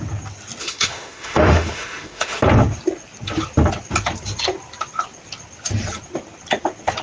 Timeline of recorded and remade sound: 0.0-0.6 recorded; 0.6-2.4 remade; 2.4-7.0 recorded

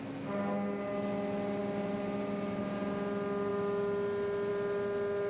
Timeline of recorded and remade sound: 0.0-5.3 recorded

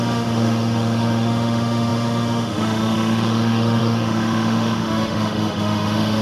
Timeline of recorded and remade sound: 0.0-6.2 remade

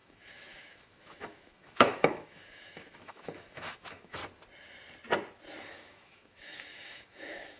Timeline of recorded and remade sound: 0.0-4.2 remade; 4.2-5.6 recorded; 5.6-7.6 remade

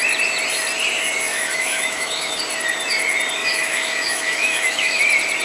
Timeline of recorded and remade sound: 0.0-1.3 recorded; 1.3-2.4 remade; 2.4-3.4 recorded; 3.4-5.0 remade; 5.0-5.4 recorded